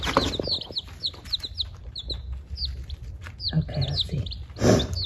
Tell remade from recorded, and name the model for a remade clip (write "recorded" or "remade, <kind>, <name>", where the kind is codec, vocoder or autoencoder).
recorded